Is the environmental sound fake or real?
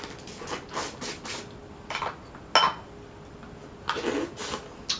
real